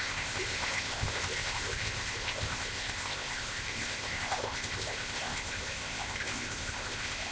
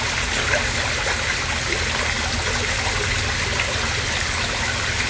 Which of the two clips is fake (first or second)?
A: first